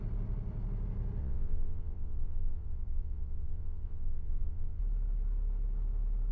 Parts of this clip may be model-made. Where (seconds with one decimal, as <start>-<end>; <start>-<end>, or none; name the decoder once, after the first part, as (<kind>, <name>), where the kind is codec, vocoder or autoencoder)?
1.2-4.8 (vocoder, WaveNeXt)